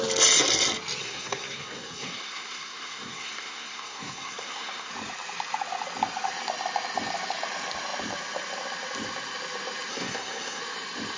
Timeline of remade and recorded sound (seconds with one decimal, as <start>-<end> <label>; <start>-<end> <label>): 0.0-1.0 recorded; 1.0-4.9 remade; 4.9-9.9 recorded; 9.9-10.6 remade; 10.6-11.2 recorded